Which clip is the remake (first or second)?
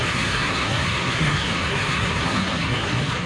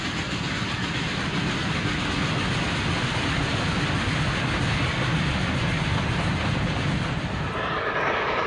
first